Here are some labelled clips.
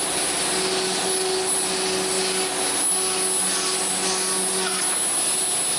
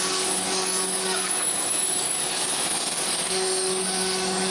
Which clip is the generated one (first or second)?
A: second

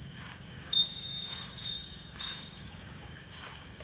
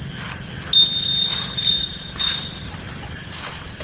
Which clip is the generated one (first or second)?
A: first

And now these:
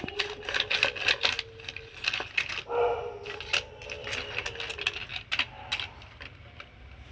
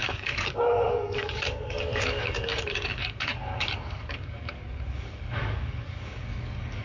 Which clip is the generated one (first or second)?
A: second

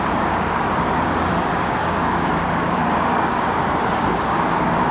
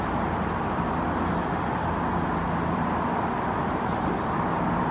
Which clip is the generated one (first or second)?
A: first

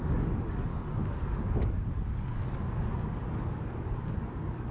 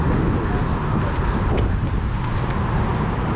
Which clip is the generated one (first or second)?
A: first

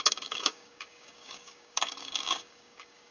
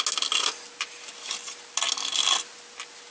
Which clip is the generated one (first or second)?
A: first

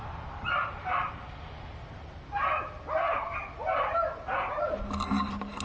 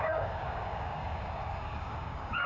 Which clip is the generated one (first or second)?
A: second